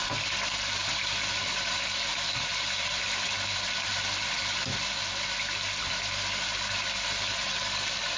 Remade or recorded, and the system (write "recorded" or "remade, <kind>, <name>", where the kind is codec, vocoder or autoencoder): recorded